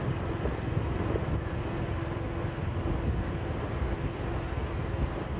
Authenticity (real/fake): real